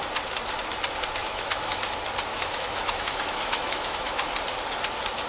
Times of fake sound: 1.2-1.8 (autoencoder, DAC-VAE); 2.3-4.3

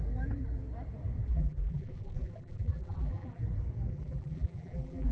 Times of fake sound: 1.3-3.4 (vocoder, BigVGAN v2); 3.9-5.1

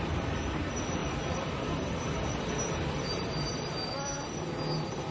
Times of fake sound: none

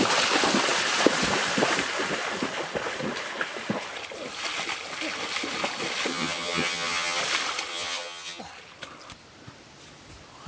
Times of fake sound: 6.1-7.2 (vocoder, HiFi-GAN); 7.7-8.4

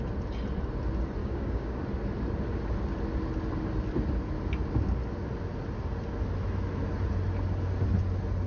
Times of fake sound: 1.2-1.8 (codec, DAC)